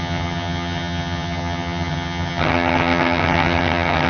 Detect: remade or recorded remade